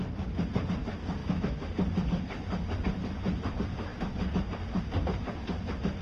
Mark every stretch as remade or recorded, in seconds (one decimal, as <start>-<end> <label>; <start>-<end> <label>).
0.0-1.2 recorded; 1.2-1.7 remade; 1.7-6.0 recorded